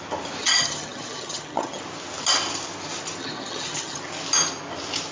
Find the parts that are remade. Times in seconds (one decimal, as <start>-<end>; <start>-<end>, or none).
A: 0.4-1.8; 3.2-4.0